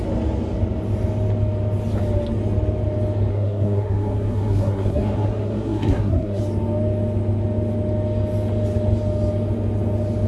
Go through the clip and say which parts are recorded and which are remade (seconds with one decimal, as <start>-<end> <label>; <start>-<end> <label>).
0.0-3.3 recorded; 3.3-6.4 remade; 6.4-10.3 recorded